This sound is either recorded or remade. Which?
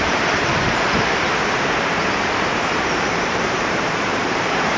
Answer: remade